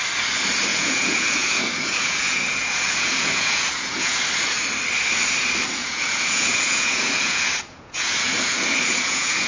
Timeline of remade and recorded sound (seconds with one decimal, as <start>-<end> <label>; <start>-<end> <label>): 0.0-0.7 recorded; 0.7-4.2 remade; 4.2-5.8 recorded; 5.8-9.5 remade